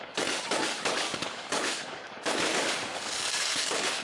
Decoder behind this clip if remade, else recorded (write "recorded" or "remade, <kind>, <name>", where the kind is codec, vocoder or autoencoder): remade, codec, DAC